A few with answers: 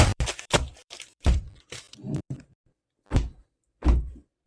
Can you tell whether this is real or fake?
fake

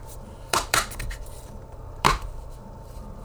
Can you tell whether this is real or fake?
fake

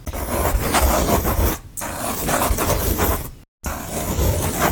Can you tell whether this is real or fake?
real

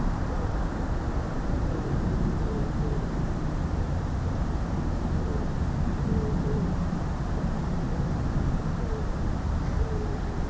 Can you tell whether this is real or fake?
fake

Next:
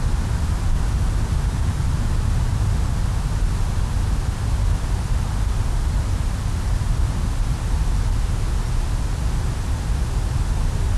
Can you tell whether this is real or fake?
real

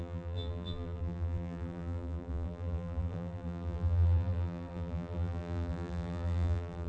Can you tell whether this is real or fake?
fake